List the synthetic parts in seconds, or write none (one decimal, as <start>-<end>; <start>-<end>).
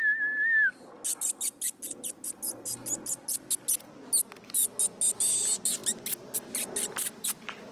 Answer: none